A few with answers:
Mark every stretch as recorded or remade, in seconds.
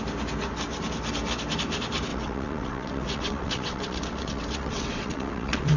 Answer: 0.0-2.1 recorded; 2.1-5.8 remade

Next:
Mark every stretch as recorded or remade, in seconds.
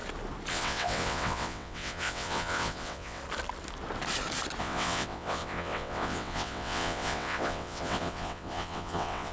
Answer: 0.0-0.5 recorded; 0.5-3.2 remade; 3.2-4.6 recorded; 4.6-9.3 remade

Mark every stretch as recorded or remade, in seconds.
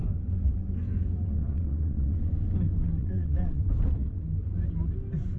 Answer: 0.0-1.2 recorded; 1.2-2.3 remade; 2.3-3.0 recorded; 3.0-3.6 remade; 3.6-5.4 recorded